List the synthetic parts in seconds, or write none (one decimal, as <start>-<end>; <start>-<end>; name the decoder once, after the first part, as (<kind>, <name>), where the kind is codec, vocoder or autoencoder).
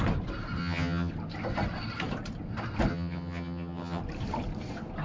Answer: 0.6-1.1 (vocoder, HiFi-GAN); 2.9-4.0